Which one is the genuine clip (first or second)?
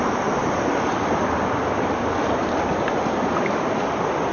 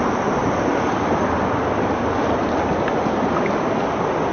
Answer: second